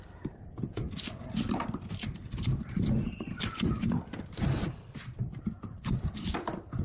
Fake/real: real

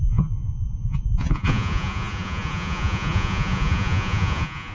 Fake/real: fake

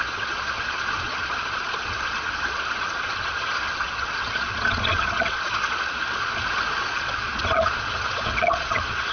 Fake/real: fake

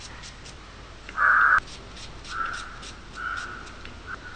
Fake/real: real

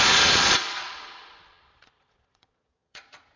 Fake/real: fake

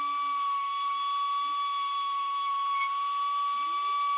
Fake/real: real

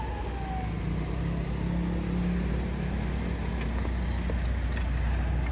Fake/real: real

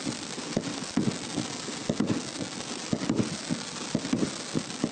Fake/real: real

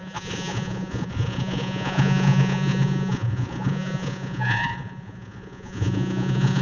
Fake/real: fake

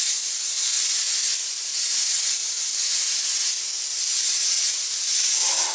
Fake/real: real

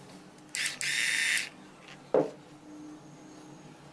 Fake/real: real